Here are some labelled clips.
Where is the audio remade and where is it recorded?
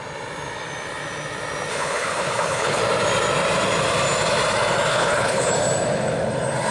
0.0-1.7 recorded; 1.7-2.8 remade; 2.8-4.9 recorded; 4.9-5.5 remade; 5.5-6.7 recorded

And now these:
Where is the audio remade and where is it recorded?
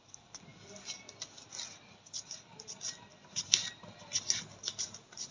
0.0-5.3 recorded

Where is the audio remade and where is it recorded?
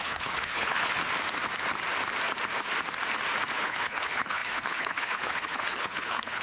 0.0-1.0 remade; 1.0-3.5 recorded; 3.5-6.4 remade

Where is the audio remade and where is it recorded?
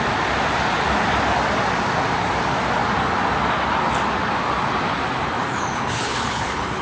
0.0-5.5 recorded; 5.5-6.8 remade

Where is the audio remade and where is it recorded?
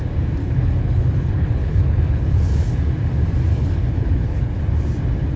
0.0-0.4 recorded; 0.4-2.8 remade; 2.8-3.5 recorded; 3.5-4.6 remade; 4.6-5.4 recorded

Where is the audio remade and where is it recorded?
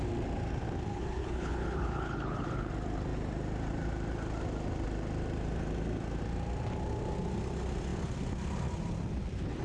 0.0-0.9 recorded; 0.9-2.7 remade; 2.7-9.6 recorded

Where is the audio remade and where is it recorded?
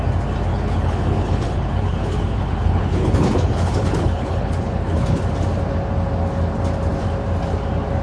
0.0-0.5 recorded; 0.5-5.2 remade; 5.2-8.0 recorded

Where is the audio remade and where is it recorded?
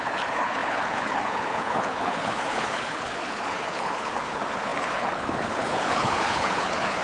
0.0-7.0 remade